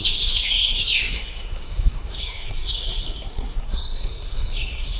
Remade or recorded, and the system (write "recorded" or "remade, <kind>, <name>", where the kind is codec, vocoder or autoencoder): remade, codec, SNAC